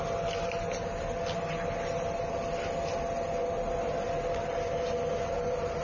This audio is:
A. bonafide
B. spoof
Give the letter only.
A